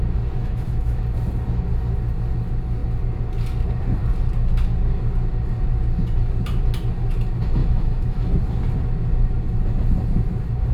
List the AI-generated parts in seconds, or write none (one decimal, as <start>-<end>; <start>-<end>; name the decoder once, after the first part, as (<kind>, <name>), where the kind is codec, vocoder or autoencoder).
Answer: 0.4-1.0 (autoencoder, DAC-VAE); 7.6-8.3